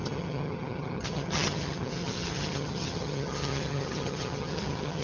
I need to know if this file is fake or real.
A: fake